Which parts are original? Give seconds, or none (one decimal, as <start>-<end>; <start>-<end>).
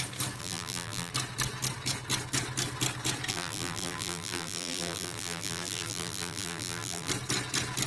0.0-0.4; 1.1-3.3; 7.1-7.9